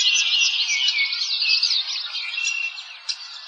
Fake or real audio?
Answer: real